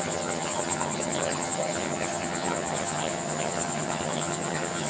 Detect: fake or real fake